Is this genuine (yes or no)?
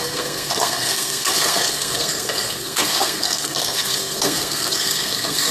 no